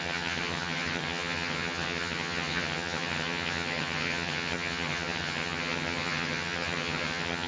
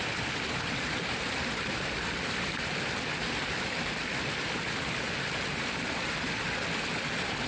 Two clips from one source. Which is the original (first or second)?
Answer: second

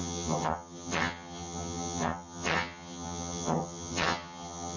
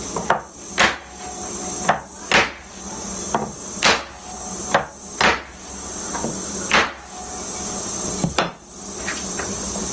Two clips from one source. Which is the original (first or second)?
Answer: second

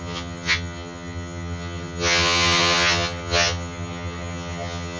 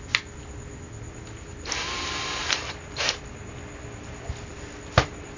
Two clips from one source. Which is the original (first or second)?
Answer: second